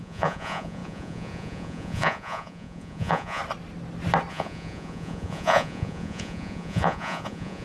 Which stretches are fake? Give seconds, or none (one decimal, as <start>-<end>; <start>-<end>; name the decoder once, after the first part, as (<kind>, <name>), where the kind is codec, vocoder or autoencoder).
0.0-3.4 (vocoder, Vocos); 4.3-7.6